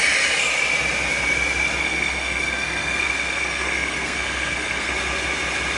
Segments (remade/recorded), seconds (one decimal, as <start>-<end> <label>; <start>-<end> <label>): 0.0-1.8 recorded; 1.8-4.9 remade; 4.9-5.8 recorded